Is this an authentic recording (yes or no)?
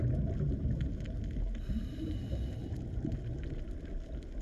yes